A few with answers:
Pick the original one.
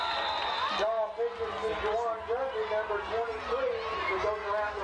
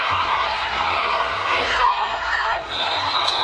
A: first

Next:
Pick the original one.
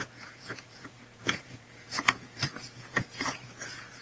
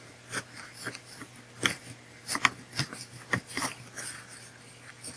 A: second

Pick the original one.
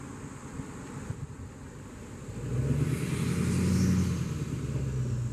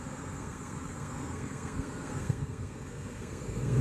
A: first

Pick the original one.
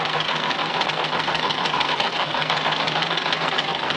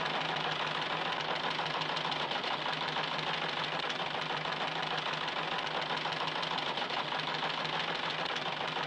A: second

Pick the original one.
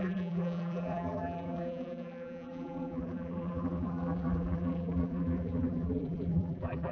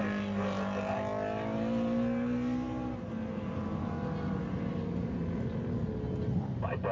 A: second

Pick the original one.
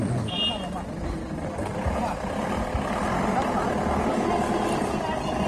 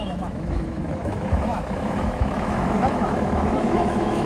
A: first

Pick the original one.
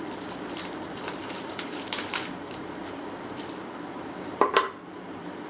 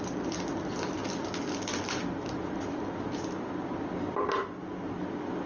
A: second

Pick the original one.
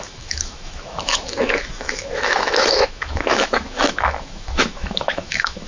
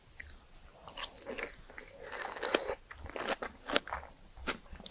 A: second